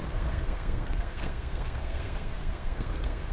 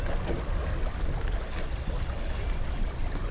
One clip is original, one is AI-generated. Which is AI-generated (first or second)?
first